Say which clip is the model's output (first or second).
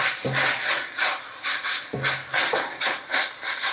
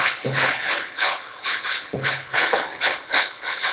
second